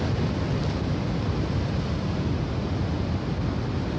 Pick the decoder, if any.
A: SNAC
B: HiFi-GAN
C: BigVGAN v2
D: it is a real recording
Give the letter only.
D